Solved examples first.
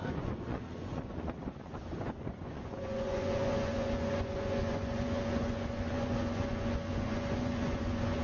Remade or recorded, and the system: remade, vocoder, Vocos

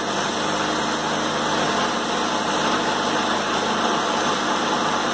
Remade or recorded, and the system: recorded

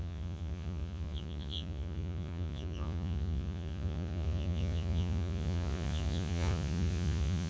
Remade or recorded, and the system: remade, vocoder, Vocos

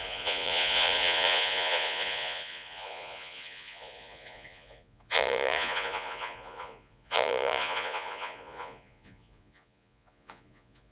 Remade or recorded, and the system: remade, vocoder, Vocos